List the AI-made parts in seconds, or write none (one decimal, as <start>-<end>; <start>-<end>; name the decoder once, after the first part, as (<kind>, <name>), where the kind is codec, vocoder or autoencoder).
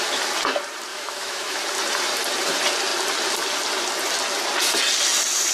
0.9-1.6 (autoencoder, DAC-VAE)